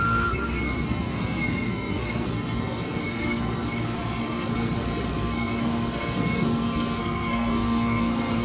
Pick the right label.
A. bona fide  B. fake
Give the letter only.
B